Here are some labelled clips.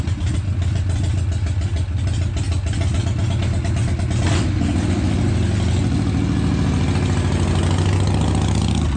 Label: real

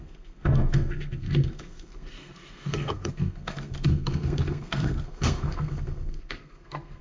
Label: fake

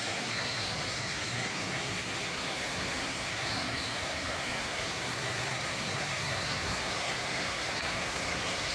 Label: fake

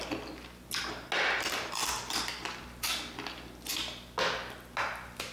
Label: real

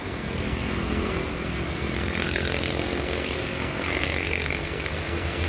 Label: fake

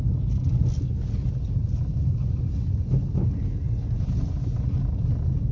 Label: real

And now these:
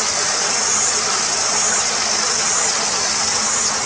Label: real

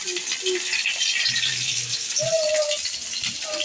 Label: real